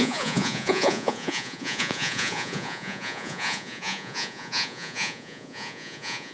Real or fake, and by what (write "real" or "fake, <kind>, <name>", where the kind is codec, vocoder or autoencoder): fake, vocoder, Vocos